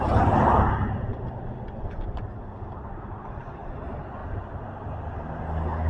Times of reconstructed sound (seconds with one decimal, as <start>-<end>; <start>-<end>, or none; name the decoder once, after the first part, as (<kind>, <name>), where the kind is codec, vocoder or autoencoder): none